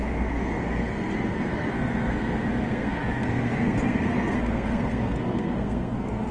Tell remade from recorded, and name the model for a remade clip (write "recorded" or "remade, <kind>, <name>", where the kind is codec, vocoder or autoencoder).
remade, codec, SNAC